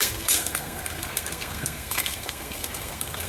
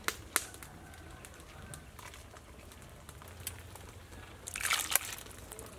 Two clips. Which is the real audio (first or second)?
second